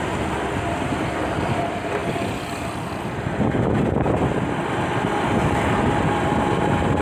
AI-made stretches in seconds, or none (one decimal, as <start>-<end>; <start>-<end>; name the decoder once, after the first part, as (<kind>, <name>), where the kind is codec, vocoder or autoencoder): none